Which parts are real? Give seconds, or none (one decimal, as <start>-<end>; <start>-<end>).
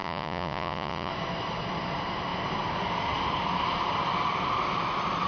1.1-5.3